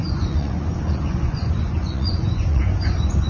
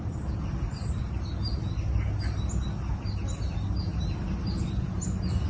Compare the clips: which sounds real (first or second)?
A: second